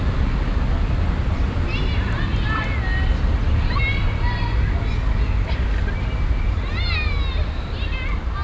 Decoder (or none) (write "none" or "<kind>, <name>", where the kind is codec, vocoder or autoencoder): none